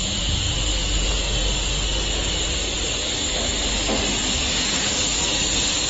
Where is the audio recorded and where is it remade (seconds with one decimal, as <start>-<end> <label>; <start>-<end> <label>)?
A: 0.0-5.9 recorded